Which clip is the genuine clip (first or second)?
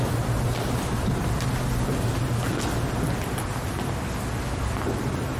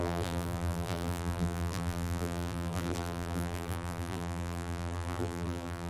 first